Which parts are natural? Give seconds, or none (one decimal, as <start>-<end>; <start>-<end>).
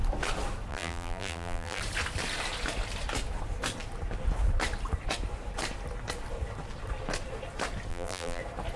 0.0-0.7; 1.8-7.9; 8.4-8.8